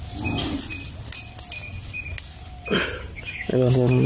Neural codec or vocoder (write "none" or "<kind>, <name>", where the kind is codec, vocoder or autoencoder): none